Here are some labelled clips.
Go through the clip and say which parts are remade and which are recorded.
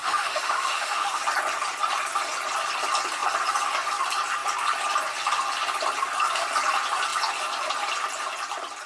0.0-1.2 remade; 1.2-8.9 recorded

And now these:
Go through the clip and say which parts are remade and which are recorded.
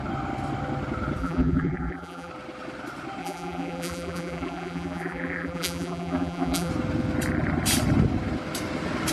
0.0-1.2 recorded; 1.2-2.3 remade; 2.3-3.2 recorded; 3.2-6.7 remade; 6.7-9.1 recorded